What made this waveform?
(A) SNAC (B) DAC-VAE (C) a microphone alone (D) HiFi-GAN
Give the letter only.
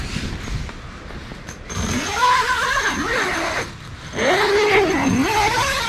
C